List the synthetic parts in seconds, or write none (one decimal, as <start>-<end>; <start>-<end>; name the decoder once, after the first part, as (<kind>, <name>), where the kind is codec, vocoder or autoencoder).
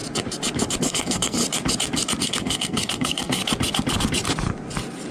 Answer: 0.8-1.4 (codec, SNAC); 2.2-3.4